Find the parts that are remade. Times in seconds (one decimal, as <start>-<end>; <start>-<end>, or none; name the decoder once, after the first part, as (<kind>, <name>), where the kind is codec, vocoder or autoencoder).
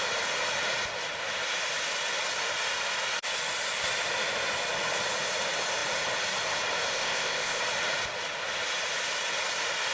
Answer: 6.9-7.6 (codec, ZipCodec)